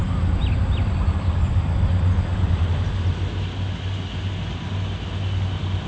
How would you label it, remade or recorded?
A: recorded